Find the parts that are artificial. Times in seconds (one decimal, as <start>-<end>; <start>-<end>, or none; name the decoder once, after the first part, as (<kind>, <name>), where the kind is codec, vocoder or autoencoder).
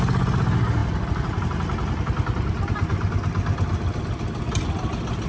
none